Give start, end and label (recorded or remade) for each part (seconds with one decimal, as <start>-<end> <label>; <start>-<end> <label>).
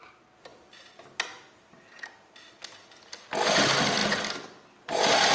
0.0-5.3 recorded